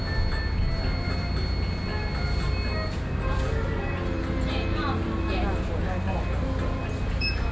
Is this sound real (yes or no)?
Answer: yes